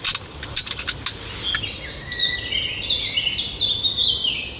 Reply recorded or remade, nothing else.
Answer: recorded